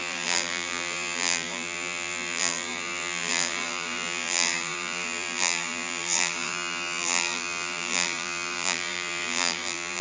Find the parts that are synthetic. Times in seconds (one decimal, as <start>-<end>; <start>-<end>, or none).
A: 0.0-10.0